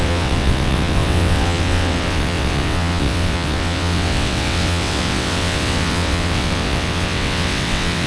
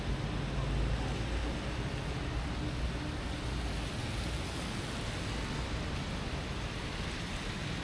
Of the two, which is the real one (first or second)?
second